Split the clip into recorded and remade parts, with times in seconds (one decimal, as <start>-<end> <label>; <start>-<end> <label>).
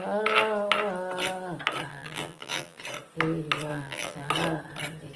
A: 0.0-1.9 recorded; 1.9-2.8 remade; 2.8-3.7 recorded; 3.7-4.3 remade; 4.3-5.2 recorded